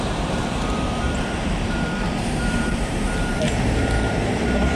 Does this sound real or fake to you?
fake